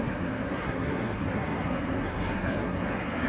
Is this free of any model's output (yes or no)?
no